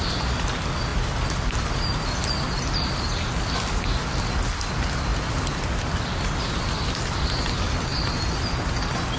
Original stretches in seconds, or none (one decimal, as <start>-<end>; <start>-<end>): 0.0-0.9; 3.8-5.1; 6.5-9.2

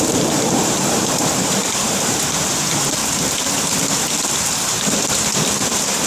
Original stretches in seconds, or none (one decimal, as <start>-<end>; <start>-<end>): 3.0-4.7

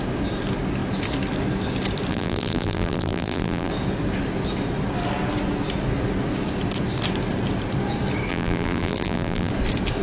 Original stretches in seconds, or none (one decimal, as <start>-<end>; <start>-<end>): 0.0-2.1; 3.7-8.3; 9.5-10.0

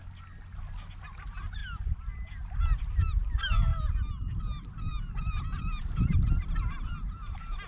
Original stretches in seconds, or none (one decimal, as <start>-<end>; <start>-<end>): 0.0-4.9; 6.4-7.7

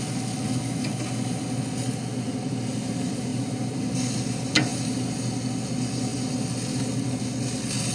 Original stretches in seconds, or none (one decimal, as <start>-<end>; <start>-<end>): 0.0-3.3; 3.9-7.9

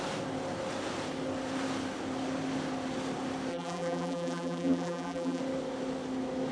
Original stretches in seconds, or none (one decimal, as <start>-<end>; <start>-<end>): 0.0-3.5; 5.4-6.5

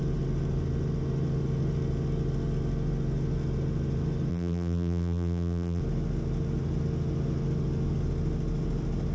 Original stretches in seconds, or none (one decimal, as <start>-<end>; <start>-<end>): 0.0-4.3; 5.8-9.1

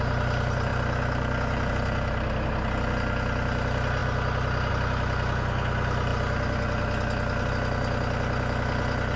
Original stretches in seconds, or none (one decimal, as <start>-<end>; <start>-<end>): 0.0-9.2